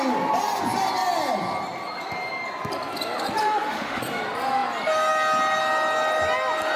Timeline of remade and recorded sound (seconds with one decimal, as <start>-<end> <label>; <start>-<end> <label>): 0.0-3.4 recorded; 3.4-4.0 remade; 4.0-6.8 recorded